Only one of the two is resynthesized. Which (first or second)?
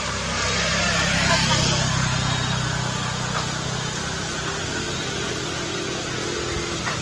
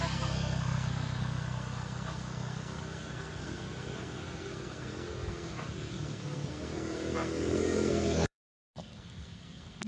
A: second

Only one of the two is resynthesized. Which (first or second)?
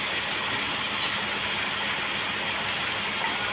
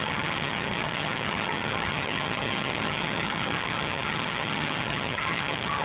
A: second